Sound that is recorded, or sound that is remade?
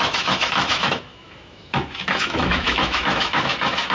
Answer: remade